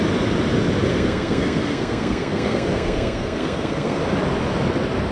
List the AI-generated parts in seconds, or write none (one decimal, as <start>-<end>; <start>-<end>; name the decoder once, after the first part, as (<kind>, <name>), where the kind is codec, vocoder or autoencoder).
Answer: 0.9-4.0 (codec, SNAC)